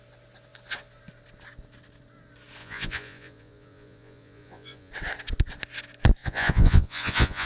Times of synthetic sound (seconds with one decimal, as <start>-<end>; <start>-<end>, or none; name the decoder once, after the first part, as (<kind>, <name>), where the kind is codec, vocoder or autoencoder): 2.6-4.9 (vocoder, Vocos); 6.2-7.5